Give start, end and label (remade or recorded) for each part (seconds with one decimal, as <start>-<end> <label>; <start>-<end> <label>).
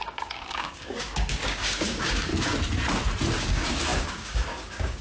0.0-2.3 remade; 2.3-3.4 recorded; 3.4-5.0 remade